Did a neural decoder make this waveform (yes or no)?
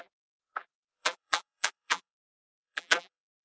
yes